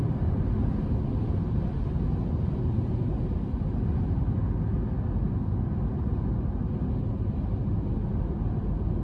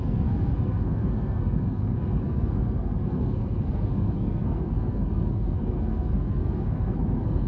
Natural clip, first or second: first